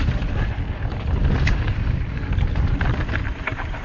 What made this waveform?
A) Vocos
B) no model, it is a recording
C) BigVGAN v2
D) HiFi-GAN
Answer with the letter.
B